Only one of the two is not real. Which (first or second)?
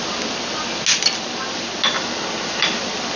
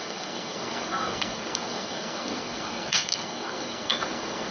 second